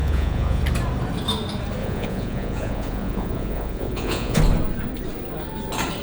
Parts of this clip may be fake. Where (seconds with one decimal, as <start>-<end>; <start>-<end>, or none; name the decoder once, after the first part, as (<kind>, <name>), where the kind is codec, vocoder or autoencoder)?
0.0-0.6 (vocoder, Vocos); 1.8-4.4